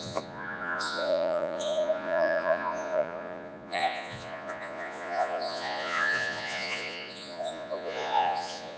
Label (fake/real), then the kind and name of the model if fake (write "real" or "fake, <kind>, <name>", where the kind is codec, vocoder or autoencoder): fake, vocoder, Vocos